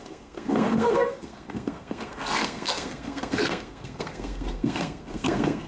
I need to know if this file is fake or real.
fake